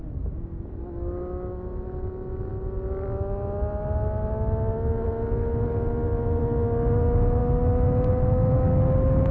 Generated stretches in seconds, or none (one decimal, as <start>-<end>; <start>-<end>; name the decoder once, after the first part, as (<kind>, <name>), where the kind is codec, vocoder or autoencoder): none